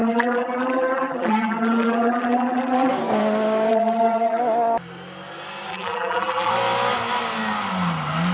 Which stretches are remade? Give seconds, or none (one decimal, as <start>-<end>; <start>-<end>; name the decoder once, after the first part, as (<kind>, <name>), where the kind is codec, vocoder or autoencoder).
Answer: 0.0-2.9 (vocoder, BigVGAN v2); 3.7-4.4; 5.7-6.5